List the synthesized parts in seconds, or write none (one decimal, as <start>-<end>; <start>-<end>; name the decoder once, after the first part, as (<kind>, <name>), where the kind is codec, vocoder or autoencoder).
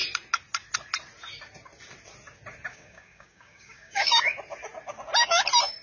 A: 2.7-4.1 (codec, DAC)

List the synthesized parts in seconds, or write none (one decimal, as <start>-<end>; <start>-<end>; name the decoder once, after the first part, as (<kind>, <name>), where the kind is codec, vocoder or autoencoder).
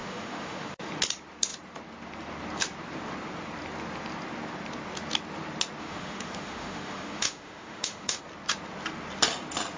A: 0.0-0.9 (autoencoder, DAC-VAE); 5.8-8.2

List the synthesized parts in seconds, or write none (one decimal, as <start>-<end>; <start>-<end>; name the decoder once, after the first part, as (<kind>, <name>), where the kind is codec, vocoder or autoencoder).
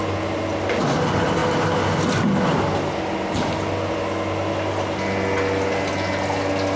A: none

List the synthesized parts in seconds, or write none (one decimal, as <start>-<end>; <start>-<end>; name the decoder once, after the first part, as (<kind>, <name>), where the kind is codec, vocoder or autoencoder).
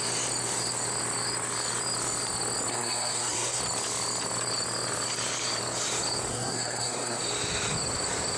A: 2.7-3.6 (codec, SNAC); 6.3-7.2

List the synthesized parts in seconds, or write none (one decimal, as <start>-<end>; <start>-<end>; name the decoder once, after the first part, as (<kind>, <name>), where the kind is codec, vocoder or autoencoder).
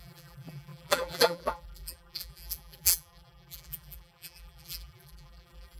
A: 0.0-5.8 (vocoder, BigVGAN v2)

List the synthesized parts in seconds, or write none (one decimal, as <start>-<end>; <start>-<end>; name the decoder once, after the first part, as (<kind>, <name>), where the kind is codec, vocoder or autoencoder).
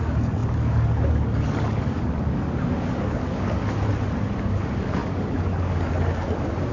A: 0.0-3.6 (codec, DAC); 4.4-6.7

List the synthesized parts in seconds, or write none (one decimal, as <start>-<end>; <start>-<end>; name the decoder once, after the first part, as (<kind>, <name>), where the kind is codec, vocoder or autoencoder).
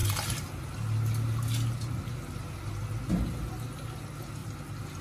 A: none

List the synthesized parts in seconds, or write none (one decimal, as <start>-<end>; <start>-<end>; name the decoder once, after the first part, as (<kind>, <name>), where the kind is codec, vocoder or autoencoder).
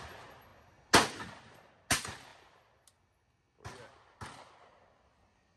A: none